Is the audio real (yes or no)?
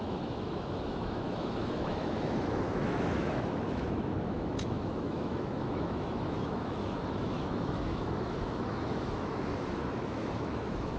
no